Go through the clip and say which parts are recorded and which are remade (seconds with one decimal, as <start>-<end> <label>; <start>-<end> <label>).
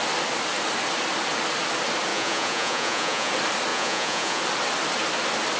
0.0-2.1 recorded; 2.1-3.3 remade; 3.3-3.7 recorded; 3.7-4.4 remade; 4.4-5.6 recorded